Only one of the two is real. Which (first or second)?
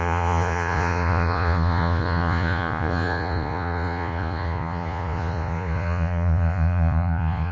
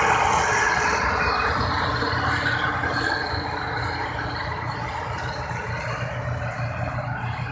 second